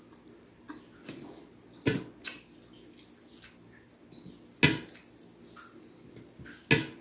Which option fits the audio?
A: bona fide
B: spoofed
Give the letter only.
A